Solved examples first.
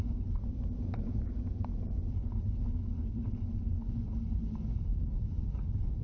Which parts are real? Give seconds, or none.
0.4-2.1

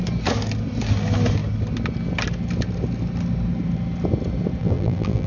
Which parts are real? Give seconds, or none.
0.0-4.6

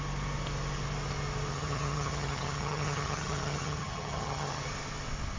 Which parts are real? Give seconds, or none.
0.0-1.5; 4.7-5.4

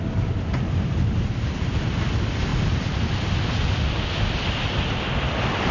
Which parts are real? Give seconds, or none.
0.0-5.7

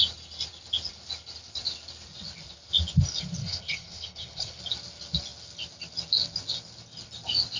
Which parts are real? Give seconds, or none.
0.0-3.4; 4.6-7.6

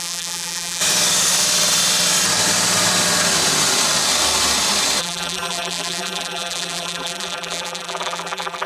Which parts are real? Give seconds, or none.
0.8-5.0